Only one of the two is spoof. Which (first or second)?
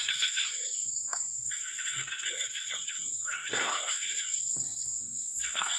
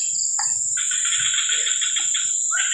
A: first